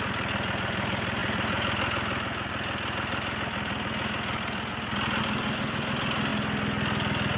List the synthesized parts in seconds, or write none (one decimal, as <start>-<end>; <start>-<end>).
none